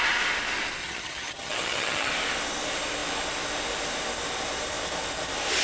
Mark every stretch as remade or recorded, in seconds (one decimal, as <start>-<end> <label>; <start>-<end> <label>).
0.0-0.8 recorded; 0.8-2.1 remade; 2.1-5.6 recorded

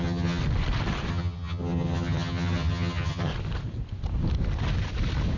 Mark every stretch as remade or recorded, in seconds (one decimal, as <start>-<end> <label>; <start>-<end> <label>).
0.0-0.4 remade; 0.4-1.1 recorded; 1.1-3.3 remade; 3.3-5.4 recorded

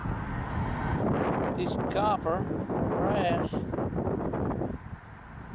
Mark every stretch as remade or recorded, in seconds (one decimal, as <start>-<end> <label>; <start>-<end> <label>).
0.0-5.5 recorded

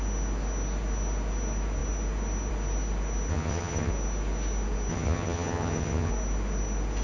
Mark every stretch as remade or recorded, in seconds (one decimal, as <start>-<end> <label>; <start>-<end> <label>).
0.0-3.3 recorded; 3.3-3.9 remade; 3.9-4.9 recorded; 4.9-6.1 remade; 6.1-7.0 recorded